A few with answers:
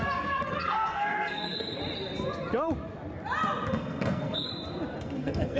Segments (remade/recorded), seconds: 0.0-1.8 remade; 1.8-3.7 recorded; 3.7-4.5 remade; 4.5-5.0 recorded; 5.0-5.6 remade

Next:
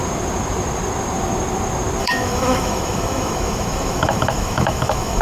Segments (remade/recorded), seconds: 0.0-2.0 recorded; 2.0-5.2 remade

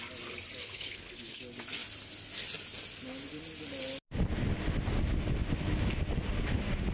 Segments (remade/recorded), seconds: 0.0-0.6 recorded; 0.6-1.4 remade; 1.4-6.9 recorded

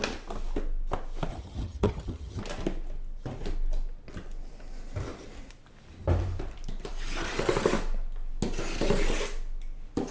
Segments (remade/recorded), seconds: 0.0-1.3 recorded; 1.3-2.4 remade; 2.4-10.1 recorded